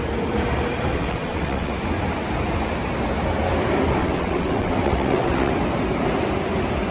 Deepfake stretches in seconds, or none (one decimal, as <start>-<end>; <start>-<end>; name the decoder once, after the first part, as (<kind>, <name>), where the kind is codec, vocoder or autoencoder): 0.9-1.7 (vocoder, WaveNeXt); 4.0-5.5